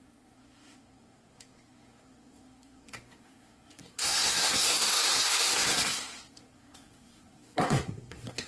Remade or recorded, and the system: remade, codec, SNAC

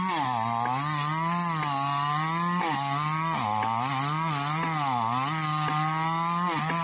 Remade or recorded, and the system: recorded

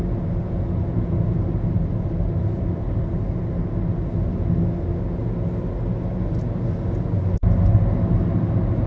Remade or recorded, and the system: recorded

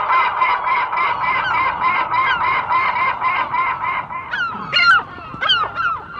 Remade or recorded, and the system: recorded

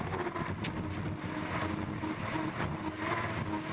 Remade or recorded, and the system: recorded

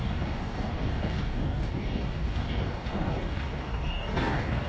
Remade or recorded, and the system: remade, codec, DAC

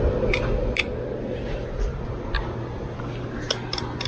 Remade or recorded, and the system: recorded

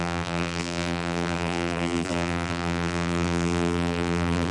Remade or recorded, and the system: remade, vocoder, BigVGAN v2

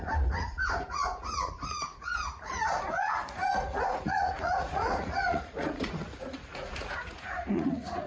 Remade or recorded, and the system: remade, vocoder, Vocos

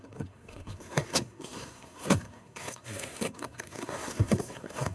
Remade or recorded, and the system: remade, codec, SNAC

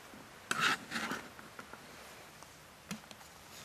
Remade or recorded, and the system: recorded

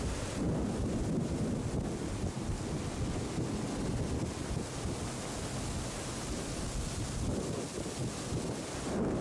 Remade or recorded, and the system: recorded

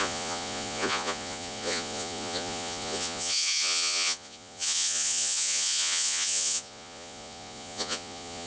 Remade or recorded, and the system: remade, vocoder, Vocos